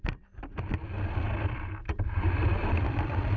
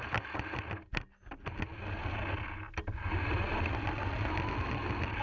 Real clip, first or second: second